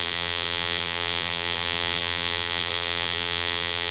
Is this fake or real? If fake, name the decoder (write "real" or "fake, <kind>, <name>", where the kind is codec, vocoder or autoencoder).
fake, vocoder, BigVGAN v2